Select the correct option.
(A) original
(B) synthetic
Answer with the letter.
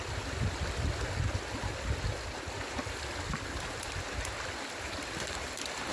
A